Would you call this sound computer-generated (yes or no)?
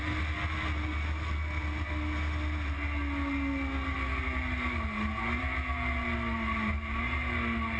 no